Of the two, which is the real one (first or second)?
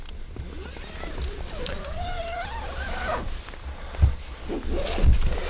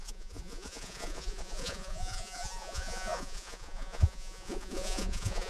first